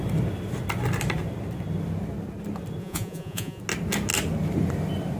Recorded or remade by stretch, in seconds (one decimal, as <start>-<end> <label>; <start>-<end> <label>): 0.0-2.8 recorded; 2.8-3.6 remade; 3.6-5.2 recorded